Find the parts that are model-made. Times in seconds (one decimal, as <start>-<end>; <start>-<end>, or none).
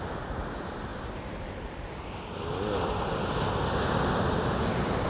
none